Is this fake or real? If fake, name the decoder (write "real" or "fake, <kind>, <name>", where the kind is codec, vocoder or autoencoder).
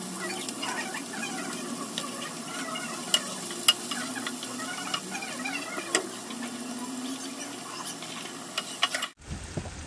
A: real